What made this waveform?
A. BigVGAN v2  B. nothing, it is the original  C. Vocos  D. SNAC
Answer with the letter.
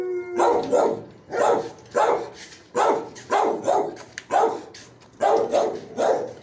B